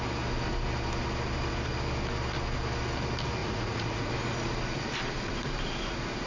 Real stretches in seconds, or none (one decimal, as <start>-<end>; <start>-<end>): 0.0-3.4; 4.1-6.3